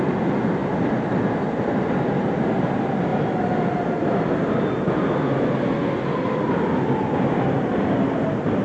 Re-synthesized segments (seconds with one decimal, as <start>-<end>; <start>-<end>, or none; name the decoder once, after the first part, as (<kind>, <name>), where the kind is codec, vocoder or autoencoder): none